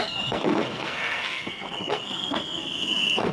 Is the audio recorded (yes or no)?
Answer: no